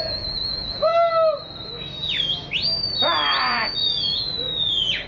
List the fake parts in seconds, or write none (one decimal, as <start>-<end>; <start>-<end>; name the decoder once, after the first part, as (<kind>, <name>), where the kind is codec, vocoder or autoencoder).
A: 0.0-0.9 (vocoder, Vocos); 3.5-5.1